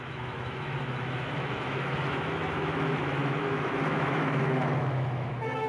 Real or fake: fake